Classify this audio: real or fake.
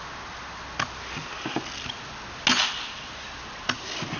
real